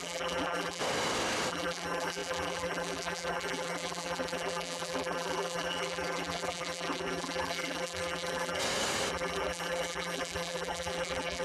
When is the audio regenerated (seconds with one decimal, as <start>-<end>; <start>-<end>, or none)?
0.0-0.8; 1.5-8.6; 9.1-11.4